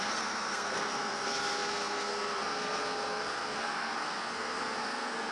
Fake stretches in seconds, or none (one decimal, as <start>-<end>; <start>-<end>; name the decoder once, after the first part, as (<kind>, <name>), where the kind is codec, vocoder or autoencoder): 0.0-5.3 (codec, SNAC)